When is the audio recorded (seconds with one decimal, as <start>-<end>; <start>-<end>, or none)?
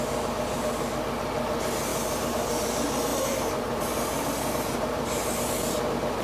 0.0-1.9; 2.5-3.1; 5.5-6.2